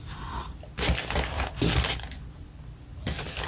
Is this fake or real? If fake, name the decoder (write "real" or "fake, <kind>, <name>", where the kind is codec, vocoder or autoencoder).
real